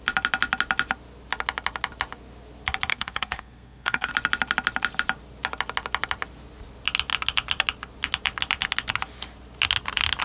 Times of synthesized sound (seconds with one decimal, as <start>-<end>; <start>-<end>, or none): 2.9-4.1

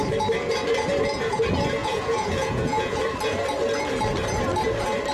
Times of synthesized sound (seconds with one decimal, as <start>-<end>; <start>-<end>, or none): 1.8-3.0

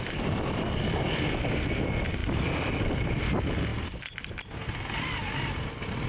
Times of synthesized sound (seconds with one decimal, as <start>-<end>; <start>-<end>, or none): none

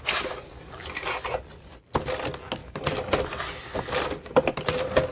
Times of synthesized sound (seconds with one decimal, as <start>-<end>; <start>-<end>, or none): none

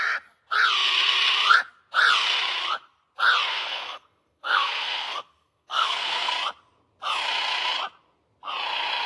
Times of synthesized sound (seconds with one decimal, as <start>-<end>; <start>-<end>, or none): 3.5-6.3

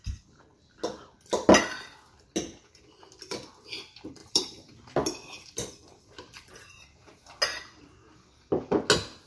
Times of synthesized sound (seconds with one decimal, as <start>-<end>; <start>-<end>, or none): 4.2-6.5

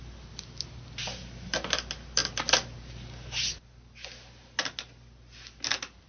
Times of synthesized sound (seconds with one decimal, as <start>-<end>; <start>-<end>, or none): none

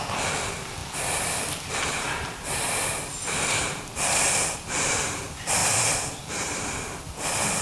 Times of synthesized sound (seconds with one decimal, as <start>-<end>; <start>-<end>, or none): none